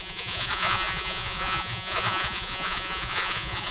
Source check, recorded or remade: remade